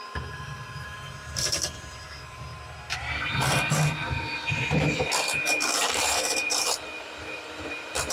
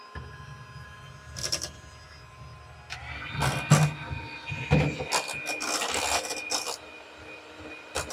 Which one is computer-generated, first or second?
first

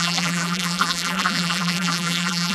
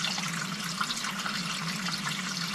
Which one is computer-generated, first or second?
first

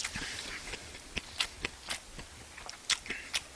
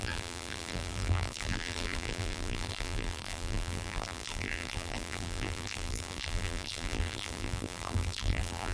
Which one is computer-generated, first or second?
second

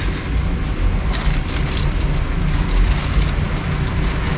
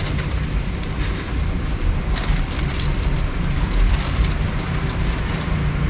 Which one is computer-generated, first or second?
second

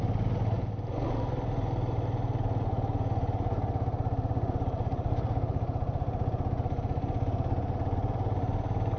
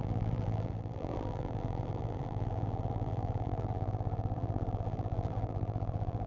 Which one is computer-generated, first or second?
second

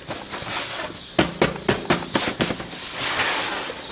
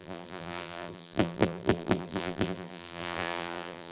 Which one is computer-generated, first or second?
second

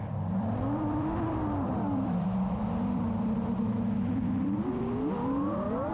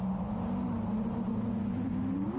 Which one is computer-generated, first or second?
first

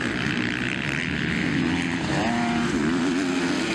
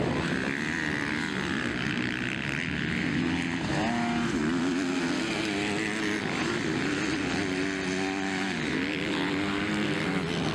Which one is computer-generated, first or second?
first